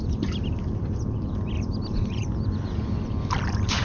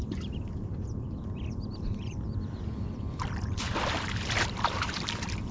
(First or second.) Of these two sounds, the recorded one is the first